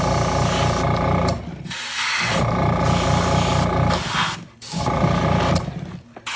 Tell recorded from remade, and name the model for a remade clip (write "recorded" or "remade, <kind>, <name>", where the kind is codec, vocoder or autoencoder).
recorded